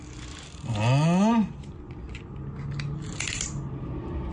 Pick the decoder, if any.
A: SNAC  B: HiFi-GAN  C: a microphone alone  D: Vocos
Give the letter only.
C